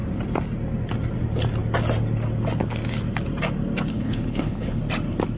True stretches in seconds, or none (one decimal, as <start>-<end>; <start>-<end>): 0.0-3.9; 4.8-5.4